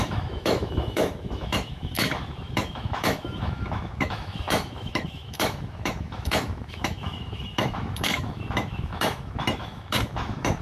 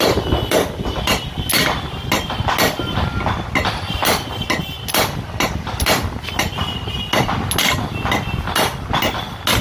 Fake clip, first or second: first